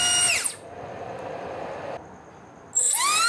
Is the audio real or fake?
real